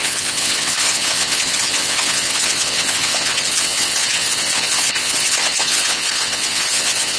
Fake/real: fake